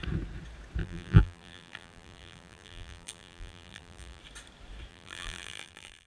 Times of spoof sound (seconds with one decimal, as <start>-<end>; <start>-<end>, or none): 0.8-4.2; 4.9-6.1